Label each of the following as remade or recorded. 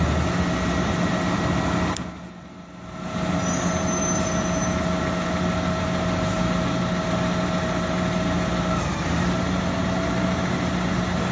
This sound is recorded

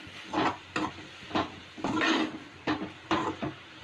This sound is recorded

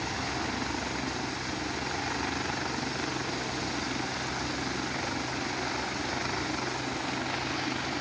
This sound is recorded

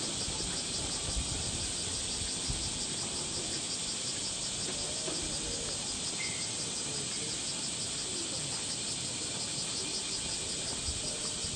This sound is recorded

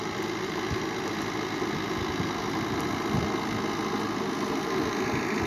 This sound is recorded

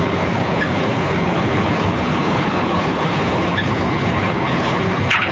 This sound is remade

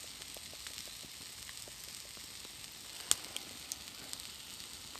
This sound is recorded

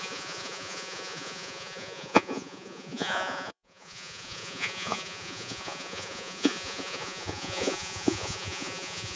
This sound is remade